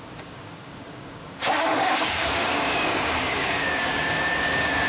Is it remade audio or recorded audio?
remade